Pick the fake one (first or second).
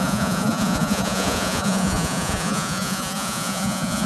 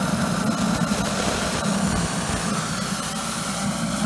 first